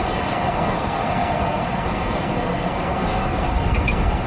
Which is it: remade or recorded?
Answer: remade